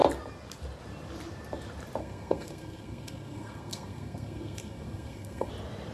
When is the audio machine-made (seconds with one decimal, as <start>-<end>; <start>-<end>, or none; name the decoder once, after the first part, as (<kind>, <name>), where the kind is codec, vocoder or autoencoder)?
2.0-5.5 (codec, SNAC)